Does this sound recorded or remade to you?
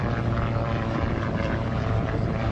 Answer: remade